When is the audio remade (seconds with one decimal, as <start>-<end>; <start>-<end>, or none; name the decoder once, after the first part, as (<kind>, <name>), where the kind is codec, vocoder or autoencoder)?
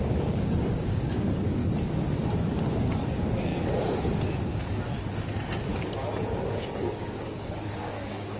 0.0-1.6 (codec, DAC); 2.4-3.5; 6.5-8.4